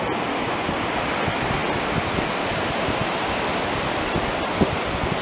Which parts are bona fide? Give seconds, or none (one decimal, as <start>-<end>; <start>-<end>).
0.0-5.2